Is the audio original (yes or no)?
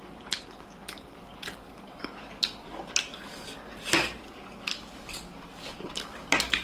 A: no